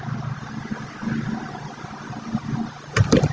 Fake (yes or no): no